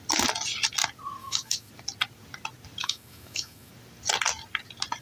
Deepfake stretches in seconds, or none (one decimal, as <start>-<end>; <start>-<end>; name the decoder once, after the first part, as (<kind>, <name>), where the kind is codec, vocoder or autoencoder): 1.2-1.7 (autoencoder, DAC-VAE); 2.8-3.7